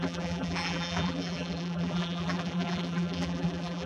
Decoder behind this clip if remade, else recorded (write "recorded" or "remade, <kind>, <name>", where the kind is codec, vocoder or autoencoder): remade, vocoder, BigVGAN v2